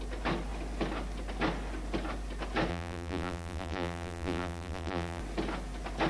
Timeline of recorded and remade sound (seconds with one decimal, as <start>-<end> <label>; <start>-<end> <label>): 0.0-2.7 recorded; 2.7-5.2 remade; 5.2-6.1 recorded